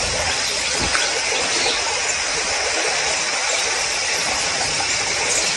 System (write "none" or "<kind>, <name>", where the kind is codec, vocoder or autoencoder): none